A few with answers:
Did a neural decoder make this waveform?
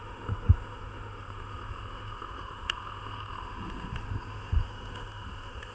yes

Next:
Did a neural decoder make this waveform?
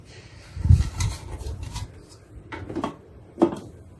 no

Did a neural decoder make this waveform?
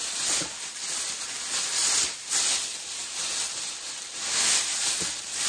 no